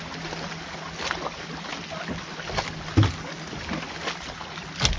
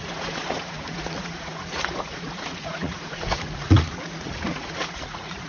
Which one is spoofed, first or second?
second